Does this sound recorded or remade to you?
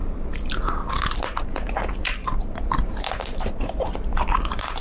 remade